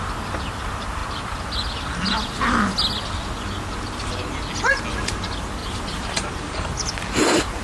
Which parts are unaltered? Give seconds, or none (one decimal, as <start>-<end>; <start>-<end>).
0.0-5.6; 6.7-7.6